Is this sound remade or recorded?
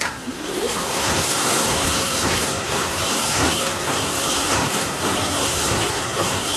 remade